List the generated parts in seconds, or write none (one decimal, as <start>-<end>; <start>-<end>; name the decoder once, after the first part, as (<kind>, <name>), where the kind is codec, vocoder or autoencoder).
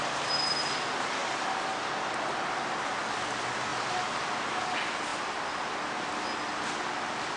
1.2-2.4 (vocoder, BigVGAN v2); 3.7-4.6; 5.1-6.2